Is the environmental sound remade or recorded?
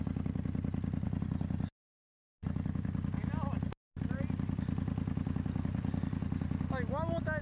recorded